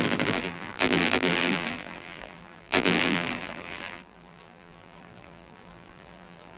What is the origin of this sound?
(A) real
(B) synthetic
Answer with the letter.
B